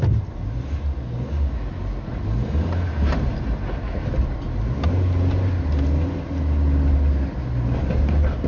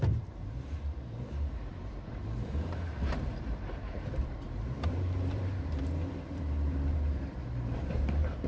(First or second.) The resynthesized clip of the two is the second